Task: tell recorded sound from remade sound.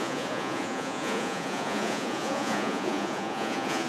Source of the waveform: remade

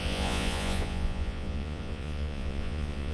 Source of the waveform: remade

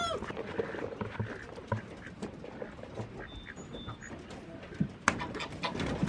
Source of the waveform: recorded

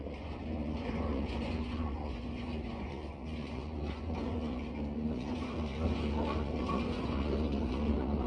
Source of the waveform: remade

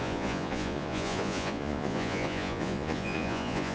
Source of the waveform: remade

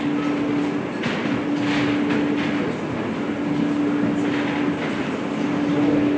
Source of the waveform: recorded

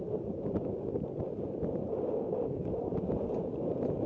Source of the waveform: recorded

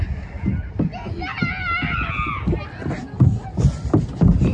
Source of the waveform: recorded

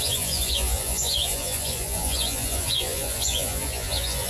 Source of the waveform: remade